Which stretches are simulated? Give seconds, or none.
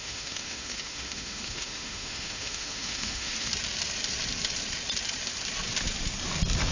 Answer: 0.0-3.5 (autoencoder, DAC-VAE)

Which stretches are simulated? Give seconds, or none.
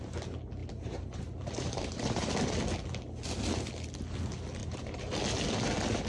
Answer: 0.6-2.3 (vocoder, BigVGAN v2); 4.6-5.2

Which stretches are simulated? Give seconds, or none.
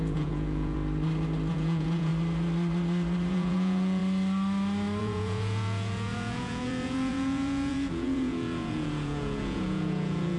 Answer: 0.0-0.8 (vocoder, Vocos); 1.5-2.1; 3.3-4.0; 5.0-10.4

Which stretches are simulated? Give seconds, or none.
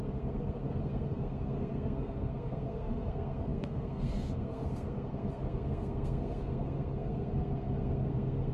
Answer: 0.0-8.5 (codec, SNAC)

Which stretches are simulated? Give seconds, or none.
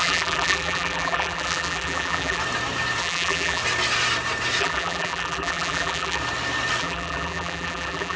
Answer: 0.0-2.4 (vocoder, BigVGAN v2); 3.0-3.6; 4.6-6.2; 6.8-8.2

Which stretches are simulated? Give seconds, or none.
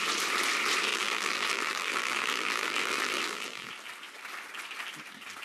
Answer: 0.9-3.7 (vocoder, BigVGAN v2)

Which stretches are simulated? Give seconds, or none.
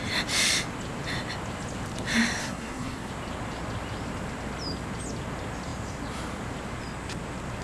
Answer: 2.4-3.1 (codec, SNAC)